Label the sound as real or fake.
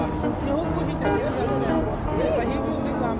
real